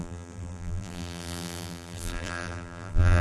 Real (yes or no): no